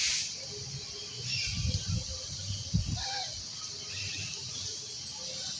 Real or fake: real